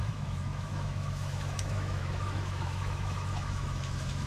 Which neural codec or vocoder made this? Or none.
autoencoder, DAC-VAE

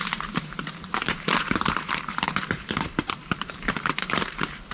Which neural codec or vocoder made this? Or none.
vocoder, BigVGAN v2